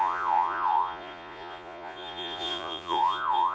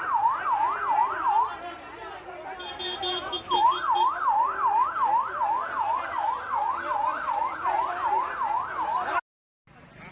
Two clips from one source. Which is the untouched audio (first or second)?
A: second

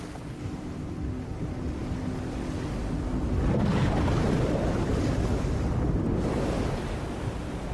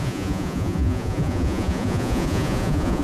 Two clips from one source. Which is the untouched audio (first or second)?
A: first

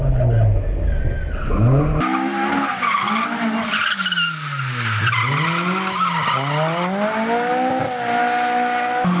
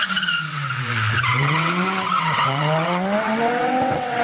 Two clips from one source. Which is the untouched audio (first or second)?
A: first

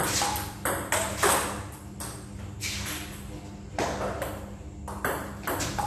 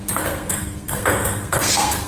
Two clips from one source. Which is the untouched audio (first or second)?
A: first